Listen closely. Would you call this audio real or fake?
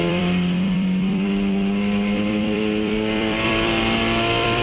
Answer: fake